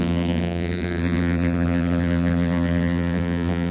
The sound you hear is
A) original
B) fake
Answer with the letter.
B